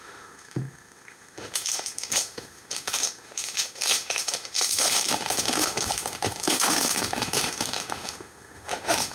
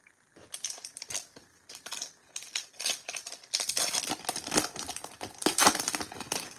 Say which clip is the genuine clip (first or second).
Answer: second